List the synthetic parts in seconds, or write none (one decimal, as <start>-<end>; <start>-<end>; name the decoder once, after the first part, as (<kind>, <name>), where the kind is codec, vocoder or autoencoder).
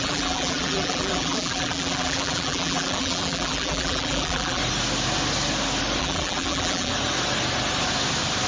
0.0-4.6 (vocoder, BigVGAN v2); 6.0-6.9